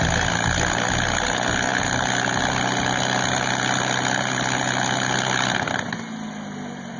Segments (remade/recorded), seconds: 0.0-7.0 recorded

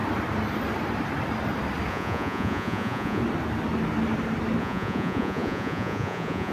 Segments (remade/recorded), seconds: 0.0-1.9 recorded; 1.9-3.2 remade; 3.2-4.6 recorded; 4.6-6.5 remade

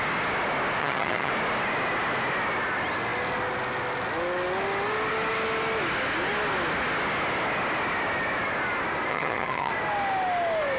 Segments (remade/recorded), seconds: 0.0-0.8 recorded; 0.8-1.3 remade; 1.3-9.1 recorded; 9.1-9.7 remade; 9.7-10.8 recorded